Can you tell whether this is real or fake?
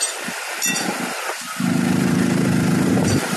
real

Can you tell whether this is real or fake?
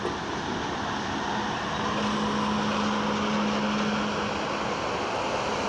real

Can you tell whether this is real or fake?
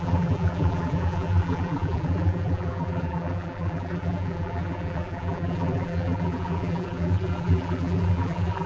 fake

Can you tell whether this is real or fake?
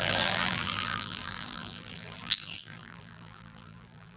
fake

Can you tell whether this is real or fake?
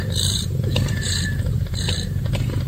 fake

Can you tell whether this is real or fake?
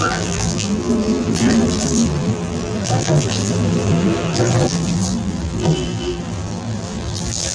fake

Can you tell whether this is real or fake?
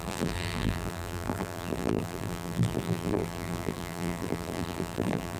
fake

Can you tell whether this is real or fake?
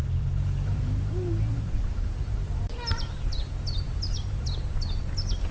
fake